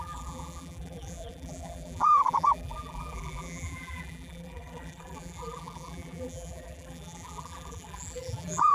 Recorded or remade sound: remade